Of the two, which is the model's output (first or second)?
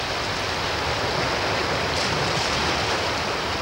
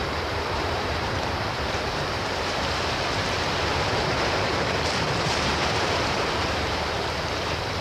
second